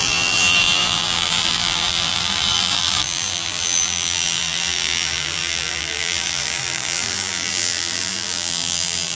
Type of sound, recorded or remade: remade